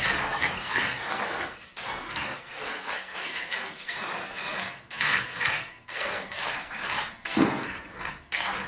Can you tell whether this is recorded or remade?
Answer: remade